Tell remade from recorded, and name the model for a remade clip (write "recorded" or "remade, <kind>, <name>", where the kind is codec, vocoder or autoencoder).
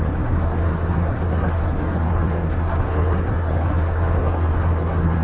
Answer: remade, codec, SNAC